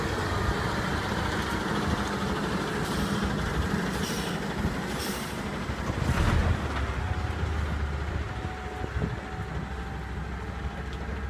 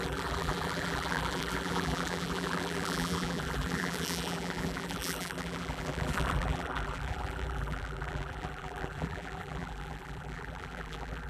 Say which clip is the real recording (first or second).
first